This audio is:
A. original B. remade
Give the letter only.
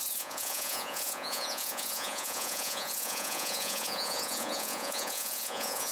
B